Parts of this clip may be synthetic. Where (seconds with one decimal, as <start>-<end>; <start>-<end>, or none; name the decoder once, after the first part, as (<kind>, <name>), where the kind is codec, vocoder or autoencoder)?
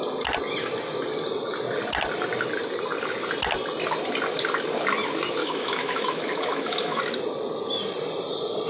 5.4-7.0 (autoencoder, DAC-VAE)